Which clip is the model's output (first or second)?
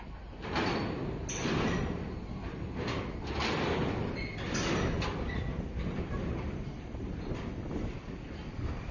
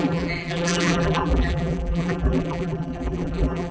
second